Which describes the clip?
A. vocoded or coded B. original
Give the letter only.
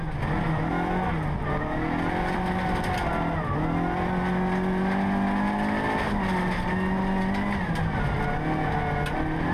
B